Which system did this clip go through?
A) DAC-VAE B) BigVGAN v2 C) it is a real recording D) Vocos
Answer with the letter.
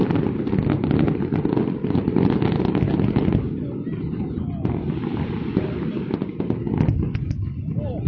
C